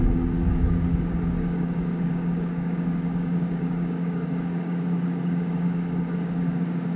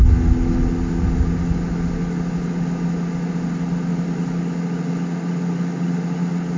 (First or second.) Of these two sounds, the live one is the second